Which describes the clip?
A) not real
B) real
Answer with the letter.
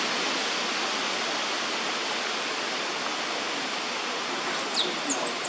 B